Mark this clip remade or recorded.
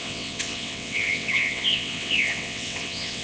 remade